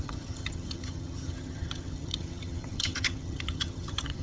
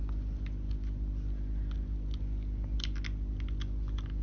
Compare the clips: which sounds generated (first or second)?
first